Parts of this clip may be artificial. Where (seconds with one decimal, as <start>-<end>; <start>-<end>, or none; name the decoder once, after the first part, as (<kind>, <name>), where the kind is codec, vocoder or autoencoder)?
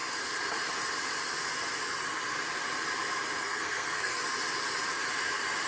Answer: 3.4-4.2 (codec, SNAC)